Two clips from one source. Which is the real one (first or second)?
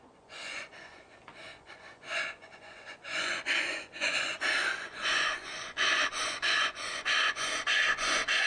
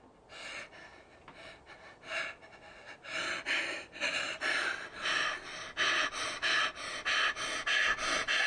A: second